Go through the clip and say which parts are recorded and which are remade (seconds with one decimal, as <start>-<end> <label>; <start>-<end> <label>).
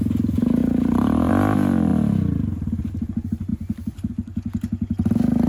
0.0-0.6 recorded; 0.6-1.3 remade; 1.3-5.5 recorded